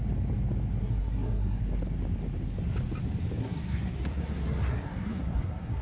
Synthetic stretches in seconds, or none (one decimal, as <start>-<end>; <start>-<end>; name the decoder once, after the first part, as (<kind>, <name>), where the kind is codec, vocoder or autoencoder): 0.8-1.6 (codec, SNAC); 3.4-5.8